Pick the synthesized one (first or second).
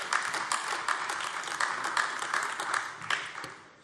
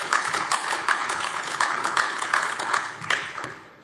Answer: second